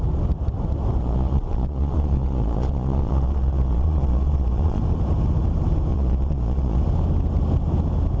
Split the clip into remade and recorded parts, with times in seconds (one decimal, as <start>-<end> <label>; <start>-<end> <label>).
0.0-1.0 recorded; 1.0-4.8 remade; 4.8-5.9 recorded; 5.9-6.8 remade; 6.8-8.2 recorded

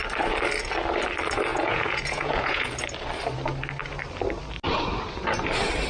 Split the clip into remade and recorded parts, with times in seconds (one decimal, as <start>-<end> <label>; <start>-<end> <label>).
0.0-1.5 recorded; 1.5-2.7 remade; 2.7-5.9 recorded

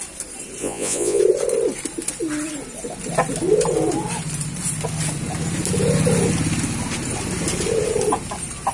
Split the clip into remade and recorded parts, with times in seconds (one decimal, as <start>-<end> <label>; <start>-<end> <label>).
0.0-0.6 recorded; 0.6-1.2 remade; 1.2-8.7 recorded

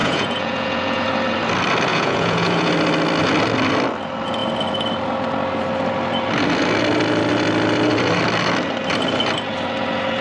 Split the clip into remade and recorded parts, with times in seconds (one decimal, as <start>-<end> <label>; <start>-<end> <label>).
0.0-1.0 remade; 1.0-1.9 recorded; 1.9-2.7 remade; 2.7-10.2 recorded